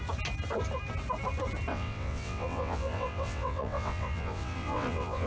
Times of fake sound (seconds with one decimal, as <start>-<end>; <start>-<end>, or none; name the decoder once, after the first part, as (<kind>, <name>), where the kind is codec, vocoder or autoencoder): 1.7-5.3 (vocoder, WaveNeXt)